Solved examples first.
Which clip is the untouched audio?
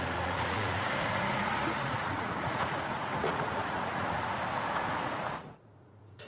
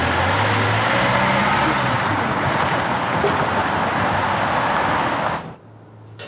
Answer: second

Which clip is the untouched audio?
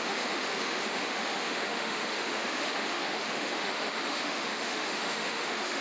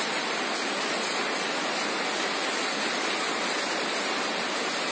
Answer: second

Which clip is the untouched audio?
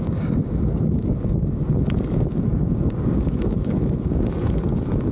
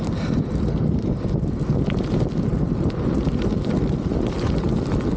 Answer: second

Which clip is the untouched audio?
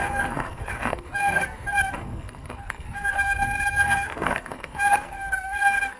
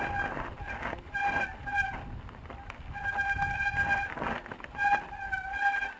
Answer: second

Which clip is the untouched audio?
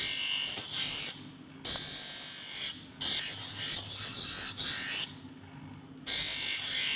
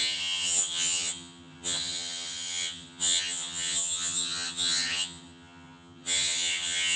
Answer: first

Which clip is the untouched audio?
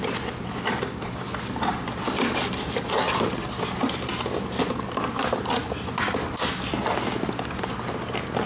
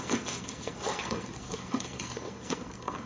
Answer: first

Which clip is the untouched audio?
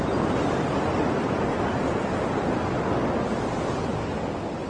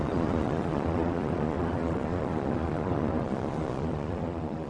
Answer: first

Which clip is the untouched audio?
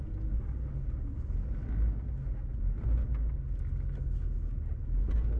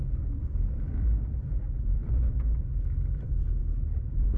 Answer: first